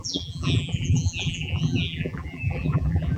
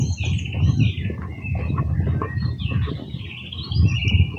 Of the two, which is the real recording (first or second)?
second